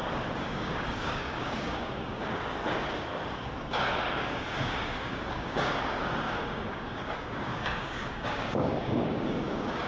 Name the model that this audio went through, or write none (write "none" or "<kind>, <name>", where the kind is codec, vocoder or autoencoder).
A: codec, DAC